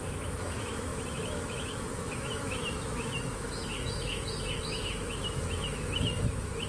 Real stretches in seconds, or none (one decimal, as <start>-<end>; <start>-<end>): none